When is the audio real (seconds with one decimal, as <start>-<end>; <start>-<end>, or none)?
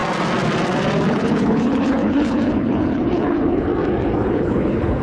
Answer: 0.0-1.1; 3.7-4.3